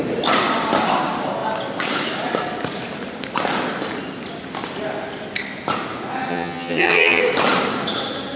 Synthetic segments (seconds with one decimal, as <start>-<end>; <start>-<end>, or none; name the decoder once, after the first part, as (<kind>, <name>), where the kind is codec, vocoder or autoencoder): 6.3-7.2 (vocoder, HiFi-GAN)